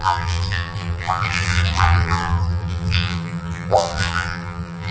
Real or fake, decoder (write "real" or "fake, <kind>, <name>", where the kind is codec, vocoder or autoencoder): fake, vocoder, BigVGAN v2